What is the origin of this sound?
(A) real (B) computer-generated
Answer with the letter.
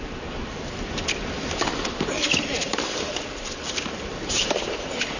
B